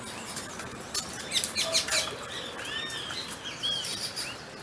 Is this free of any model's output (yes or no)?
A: yes